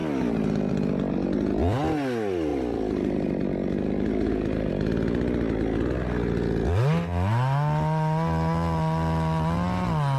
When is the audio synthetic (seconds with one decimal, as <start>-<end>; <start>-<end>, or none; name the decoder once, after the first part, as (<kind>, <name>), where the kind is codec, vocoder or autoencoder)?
0.0-0.7 (vocoder, BigVGAN v2); 2.5-4.7